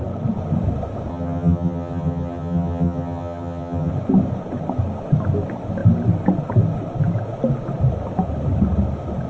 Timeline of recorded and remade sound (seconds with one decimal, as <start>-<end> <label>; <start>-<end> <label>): 0.0-1.1 recorded; 1.1-3.9 remade; 3.9-9.3 recorded